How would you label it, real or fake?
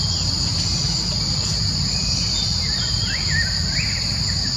real